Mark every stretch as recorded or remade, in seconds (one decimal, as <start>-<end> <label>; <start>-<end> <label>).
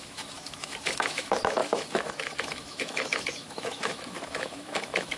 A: 0.0-5.2 remade